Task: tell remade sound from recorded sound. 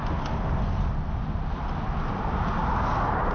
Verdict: recorded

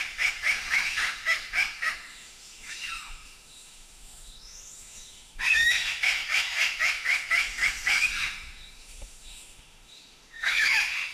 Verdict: remade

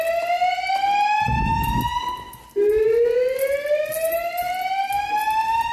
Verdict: recorded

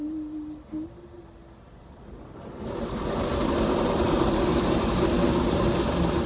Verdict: recorded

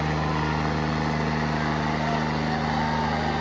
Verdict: recorded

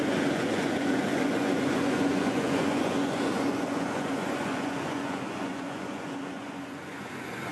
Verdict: remade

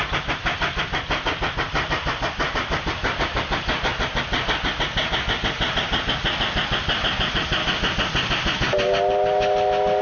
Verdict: recorded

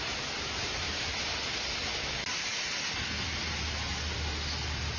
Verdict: recorded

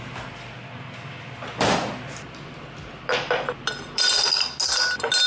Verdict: recorded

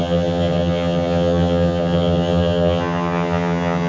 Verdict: remade